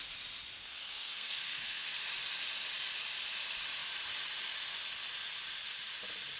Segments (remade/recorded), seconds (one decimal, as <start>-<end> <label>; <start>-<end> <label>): 0.0-0.6 recorded; 0.6-2.0 remade; 2.0-6.4 recorded